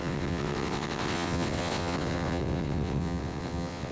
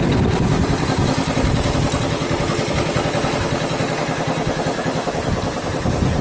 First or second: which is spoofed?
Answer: first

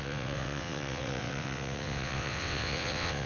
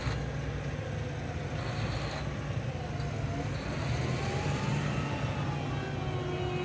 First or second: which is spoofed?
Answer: first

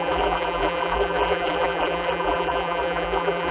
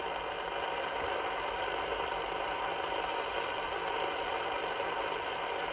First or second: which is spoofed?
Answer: first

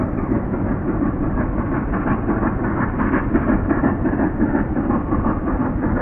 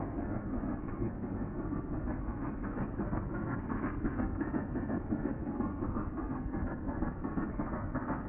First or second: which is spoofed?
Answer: second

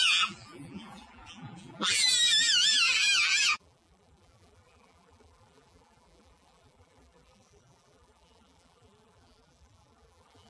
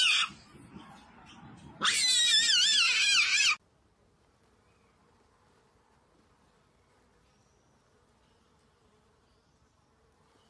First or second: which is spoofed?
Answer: first